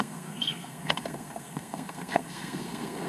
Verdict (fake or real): fake